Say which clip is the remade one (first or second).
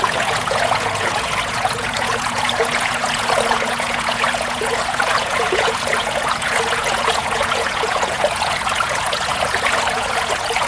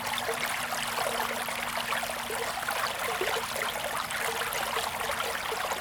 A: first